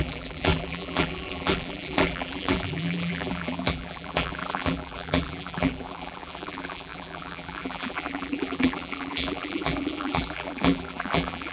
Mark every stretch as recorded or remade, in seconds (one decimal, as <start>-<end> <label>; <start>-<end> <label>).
0.0-11.5 remade